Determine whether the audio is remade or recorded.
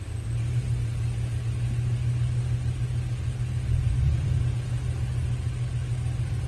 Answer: recorded